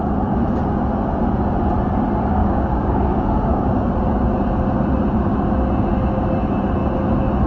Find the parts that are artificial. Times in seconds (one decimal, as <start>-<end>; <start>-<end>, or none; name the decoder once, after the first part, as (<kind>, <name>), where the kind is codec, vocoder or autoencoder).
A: 2.4-3.9 (codec, DAC)